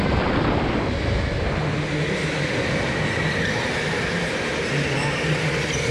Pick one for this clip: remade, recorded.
recorded